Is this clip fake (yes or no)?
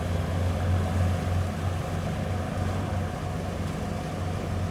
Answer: no